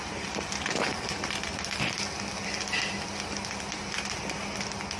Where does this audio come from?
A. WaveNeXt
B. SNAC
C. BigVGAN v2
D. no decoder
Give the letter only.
D